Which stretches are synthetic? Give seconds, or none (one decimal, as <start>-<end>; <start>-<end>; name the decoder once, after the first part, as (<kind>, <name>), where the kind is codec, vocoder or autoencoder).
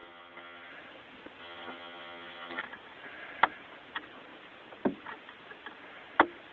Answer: 0.0-0.7 (vocoder, HiFi-GAN); 1.4-2.6